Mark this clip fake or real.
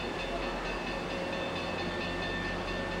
real